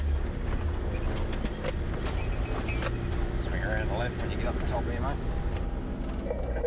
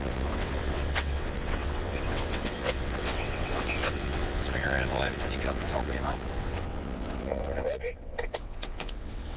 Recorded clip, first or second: first